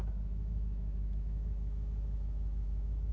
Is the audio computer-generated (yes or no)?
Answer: yes